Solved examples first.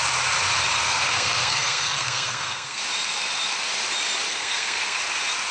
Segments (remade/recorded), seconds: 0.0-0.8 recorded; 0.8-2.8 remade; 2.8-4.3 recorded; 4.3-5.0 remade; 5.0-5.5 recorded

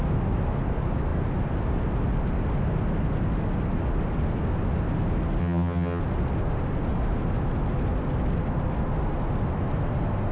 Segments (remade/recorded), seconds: 0.0-5.4 recorded; 5.4-6.0 remade; 6.0-10.3 recorded

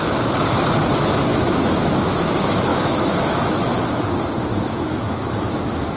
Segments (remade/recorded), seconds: 0.0-1.3 recorded; 1.3-2.3 remade; 2.3-2.7 recorded; 2.7-3.6 remade; 3.6-4.5 recorded; 4.5-6.0 remade

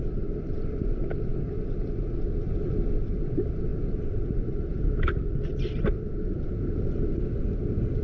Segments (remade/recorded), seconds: 0.0-8.0 recorded

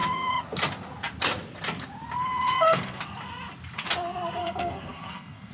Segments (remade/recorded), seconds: 0.0-2.2 recorded; 2.2-3.0 remade; 3.0-4.4 recorded; 4.4-5.5 remade

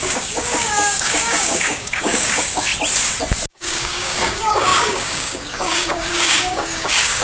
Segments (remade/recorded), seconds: 0.0-2.7 remade; 2.7-3.5 recorded; 3.5-7.2 remade